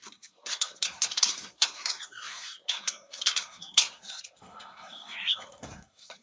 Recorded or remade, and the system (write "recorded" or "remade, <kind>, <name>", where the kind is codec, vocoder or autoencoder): remade, codec, SNAC